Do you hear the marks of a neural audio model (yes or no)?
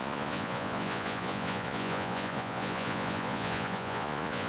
yes